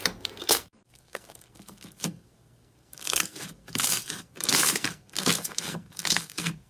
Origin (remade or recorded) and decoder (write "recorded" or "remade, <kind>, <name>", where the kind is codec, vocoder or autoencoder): remade, codec, SNAC